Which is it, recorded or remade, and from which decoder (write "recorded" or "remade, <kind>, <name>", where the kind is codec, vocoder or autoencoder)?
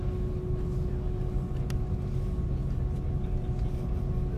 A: recorded